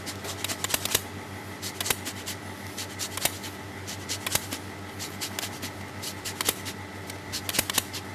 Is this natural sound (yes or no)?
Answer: yes